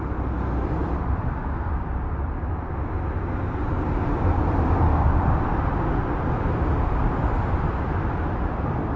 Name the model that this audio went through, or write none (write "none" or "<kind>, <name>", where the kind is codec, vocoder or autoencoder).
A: none